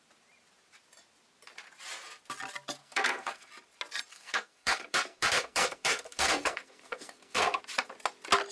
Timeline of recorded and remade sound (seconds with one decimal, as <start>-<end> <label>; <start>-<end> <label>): 0.0-2.8 recorded; 2.8-3.5 remade; 3.5-4.1 recorded; 4.1-7.6 remade; 7.6-8.5 recorded